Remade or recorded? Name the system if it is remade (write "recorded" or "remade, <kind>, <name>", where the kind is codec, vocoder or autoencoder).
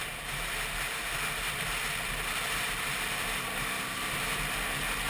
recorded